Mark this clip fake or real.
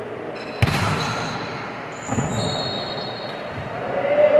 real